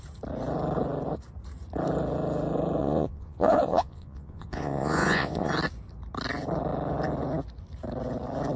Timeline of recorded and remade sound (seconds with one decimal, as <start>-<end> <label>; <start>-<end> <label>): 0.0-2.8 recorded; 2.8-5.5 remade; 5.5-8.6 recorded